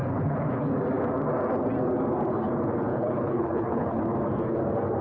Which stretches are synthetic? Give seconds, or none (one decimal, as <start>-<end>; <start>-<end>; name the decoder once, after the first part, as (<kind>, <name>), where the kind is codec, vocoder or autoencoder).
0.0-0.7 (codec, HILCodec); 2.9-4.0